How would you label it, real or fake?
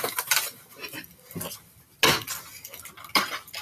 real